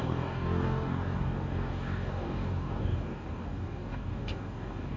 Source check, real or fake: fake